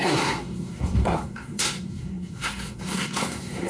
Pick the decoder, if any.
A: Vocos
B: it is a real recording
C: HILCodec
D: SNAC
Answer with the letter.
D